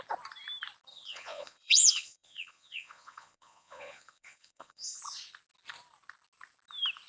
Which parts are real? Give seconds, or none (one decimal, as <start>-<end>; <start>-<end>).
0.0-0.9; 5.0-7.1